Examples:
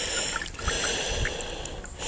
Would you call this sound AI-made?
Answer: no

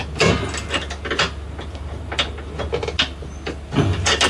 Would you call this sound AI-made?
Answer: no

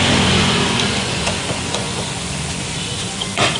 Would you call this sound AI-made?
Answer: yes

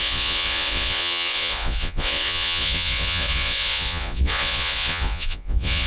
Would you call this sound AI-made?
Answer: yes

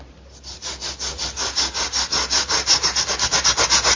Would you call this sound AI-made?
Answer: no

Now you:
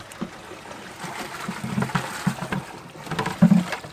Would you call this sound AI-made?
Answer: no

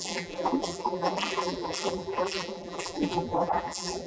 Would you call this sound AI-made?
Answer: yes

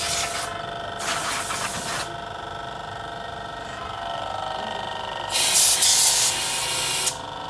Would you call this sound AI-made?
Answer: no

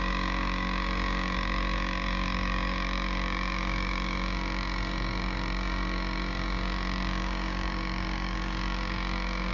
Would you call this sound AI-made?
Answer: yes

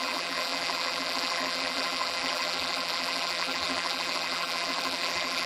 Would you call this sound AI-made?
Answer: yes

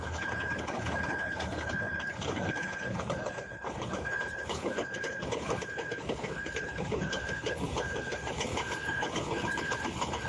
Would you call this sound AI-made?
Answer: yes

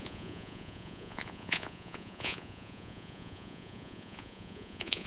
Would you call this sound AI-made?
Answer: yes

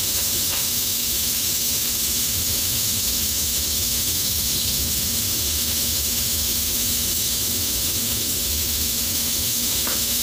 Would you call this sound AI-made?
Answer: yes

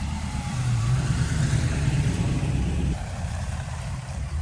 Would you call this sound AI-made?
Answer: yes